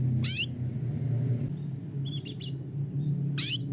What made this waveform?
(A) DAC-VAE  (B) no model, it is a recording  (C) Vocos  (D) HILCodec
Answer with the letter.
B